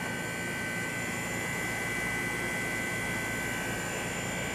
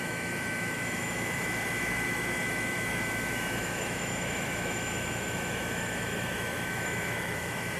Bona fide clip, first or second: first